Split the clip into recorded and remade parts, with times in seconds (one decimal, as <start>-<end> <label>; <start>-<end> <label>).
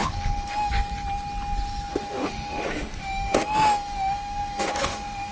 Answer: 0.0-0.7 remade; 0.7-1.9 recorded; 1.9-5.3 remade